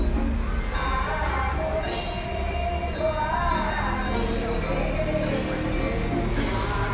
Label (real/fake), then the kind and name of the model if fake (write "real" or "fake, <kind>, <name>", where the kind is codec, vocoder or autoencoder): real